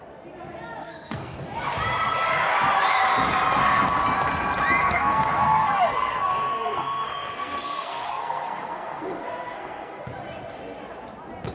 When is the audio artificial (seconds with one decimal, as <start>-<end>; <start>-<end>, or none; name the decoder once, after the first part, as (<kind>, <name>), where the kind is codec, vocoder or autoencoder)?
0.8-1.4 (codec, SNAC); 4.8-10.0